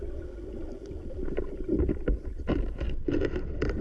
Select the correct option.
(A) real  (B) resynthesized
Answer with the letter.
A